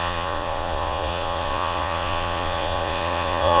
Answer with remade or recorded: remade